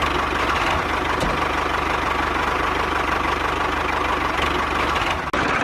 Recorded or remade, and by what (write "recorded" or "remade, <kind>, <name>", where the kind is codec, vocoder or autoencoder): recorded